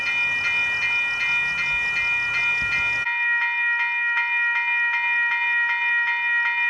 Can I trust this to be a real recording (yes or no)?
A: yes